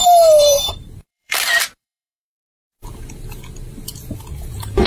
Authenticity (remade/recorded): remade